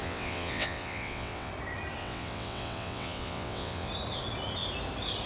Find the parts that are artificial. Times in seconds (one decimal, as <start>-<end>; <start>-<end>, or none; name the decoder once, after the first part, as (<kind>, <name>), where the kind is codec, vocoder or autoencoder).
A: 0.0-1.5 (vocoder, WaveNeXt); 2.0-3.9